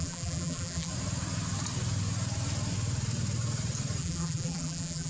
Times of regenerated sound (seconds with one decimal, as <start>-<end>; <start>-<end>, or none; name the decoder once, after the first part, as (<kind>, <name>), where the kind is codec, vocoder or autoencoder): 0.0-0.9 (vocoder, BigVGAN v2); 4.0-5.1